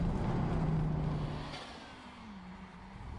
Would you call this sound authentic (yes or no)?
yes